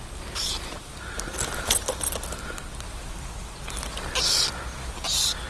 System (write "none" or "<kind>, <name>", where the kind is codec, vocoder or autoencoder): none